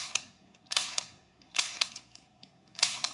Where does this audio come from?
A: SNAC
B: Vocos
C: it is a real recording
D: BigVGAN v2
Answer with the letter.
A